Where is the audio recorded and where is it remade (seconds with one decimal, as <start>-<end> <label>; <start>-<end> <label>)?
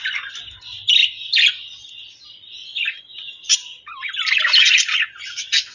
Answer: 0.0-1.0 recorded; 1.0-4.4 remade; 4.4-5.7 recorded